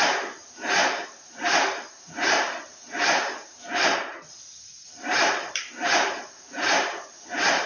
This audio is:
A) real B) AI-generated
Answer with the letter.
B